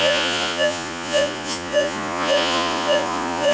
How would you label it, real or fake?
fake